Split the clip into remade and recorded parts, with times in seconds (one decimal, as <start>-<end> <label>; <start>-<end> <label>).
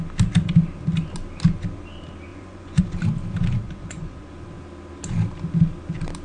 0.0-2.3 recorded; 2.3-2.8 remade; 2.8-3.6 recorded; 3.6-4.3 remade; 4.3-6.2 recorded